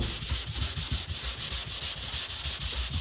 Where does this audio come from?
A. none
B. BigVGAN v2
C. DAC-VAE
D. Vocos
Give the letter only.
A